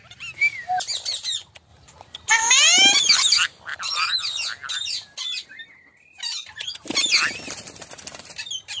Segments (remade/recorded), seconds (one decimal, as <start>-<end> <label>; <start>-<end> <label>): 0.0-8.8 recorded